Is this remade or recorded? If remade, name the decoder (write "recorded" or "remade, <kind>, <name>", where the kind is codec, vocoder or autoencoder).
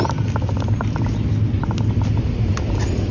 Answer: recorded